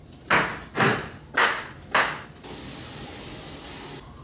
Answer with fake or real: real